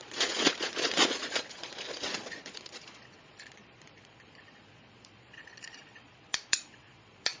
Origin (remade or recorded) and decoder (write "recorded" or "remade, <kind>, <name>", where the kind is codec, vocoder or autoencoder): remade, vocoder, Vocos